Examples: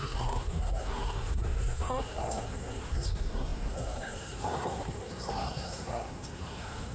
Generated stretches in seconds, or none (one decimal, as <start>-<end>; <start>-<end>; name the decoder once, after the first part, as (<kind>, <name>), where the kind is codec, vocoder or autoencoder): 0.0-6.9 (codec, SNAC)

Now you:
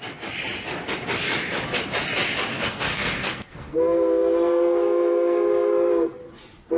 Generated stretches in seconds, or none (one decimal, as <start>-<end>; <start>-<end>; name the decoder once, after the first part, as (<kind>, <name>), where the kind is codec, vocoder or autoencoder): 2.5-5.9 (codec, SNAC)

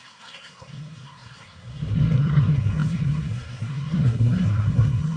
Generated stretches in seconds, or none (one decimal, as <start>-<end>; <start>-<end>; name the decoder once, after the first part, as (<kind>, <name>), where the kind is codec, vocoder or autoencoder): 0.0-5.2 (codec, SNAC)